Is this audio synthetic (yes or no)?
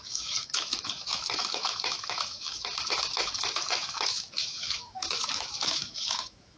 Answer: yes